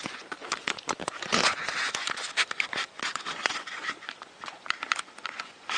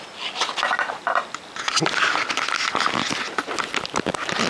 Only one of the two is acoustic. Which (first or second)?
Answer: second